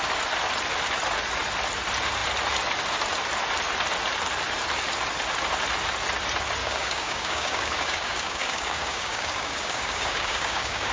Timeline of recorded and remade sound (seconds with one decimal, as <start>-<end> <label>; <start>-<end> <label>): 0.0-6.6 recorded; 6.6-10.9 remade